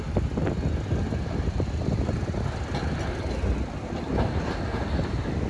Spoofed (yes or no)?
no